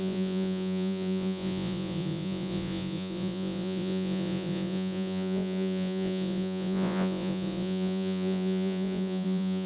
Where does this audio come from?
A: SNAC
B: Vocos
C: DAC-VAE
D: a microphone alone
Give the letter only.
B